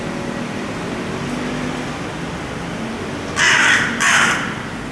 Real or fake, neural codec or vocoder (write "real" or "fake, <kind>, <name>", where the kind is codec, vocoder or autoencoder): real